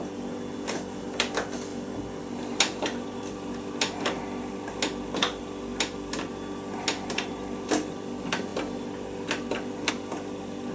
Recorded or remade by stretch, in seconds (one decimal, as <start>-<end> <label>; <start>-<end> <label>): 0.0-10.7 recorded